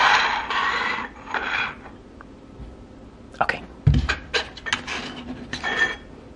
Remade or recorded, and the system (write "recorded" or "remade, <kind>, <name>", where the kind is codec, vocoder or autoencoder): recorded